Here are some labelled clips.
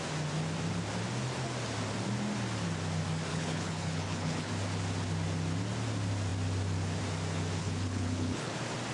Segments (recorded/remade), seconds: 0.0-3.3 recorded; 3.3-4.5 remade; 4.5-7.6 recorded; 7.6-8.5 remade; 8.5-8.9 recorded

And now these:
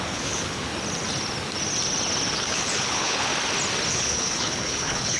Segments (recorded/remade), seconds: 0.0-0.7 remade; 0.7-2.5 recorded; 2.5-3.3 remade; 3.3-3.9 recorded; 3.9-5.2 remade

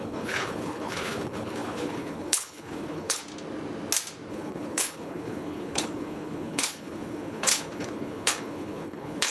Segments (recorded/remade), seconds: 0.0-3.2 remade; 3.2-4.3 recorded; 4.3-9.3 remade

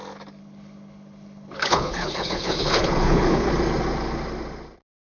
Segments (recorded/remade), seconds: 0.0-0.4 recorded; 0.4-3.5 remade; 3.5-5.1 recorded

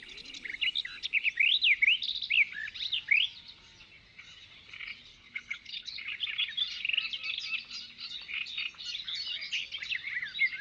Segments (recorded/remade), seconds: 0.0-5.1 recorded; 5.1-6.0 remade; 6.0-10.6 recorded

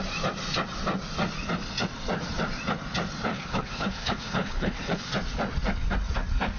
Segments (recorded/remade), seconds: 0.0-3.3 recorded; 3.3-5.1 remade; 5.1-6.6 recorded

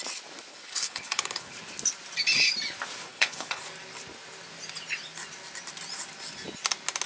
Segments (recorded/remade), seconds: 0.0-0.5 recorded; 0.5-1.5 remade; 1.5-3.1 recorded; 3.1-3.6 remade; 3.6-7.1 recorded